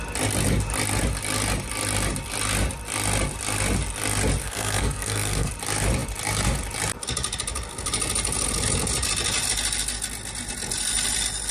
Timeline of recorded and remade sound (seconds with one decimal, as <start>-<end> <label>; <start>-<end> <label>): 0.0-4.4 recorded; 4.4-5.5 remade; 5.5-11.5 recorded